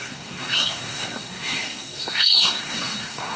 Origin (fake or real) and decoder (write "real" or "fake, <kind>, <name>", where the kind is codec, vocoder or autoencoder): fake, codec, SNAC